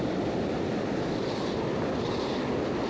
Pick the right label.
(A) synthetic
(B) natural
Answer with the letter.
B